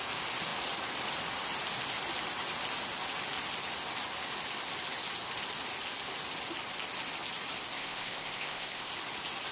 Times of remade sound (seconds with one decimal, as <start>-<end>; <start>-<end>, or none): 7.8-8.9